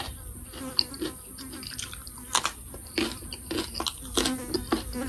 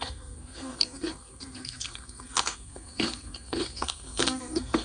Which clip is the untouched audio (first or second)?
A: first